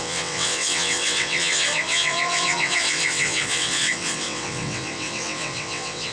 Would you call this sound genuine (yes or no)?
no